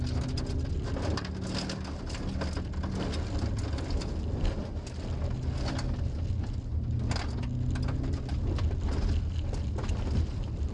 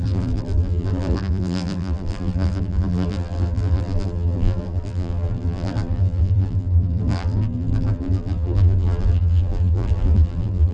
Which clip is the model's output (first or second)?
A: second